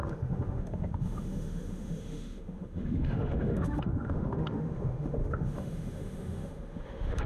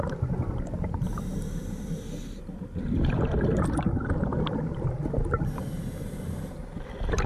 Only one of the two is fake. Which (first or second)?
first